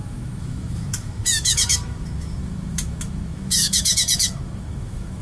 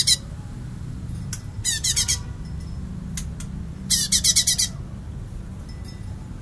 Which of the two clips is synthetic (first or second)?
first